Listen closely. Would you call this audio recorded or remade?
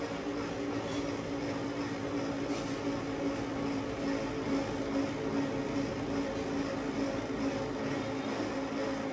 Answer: recorded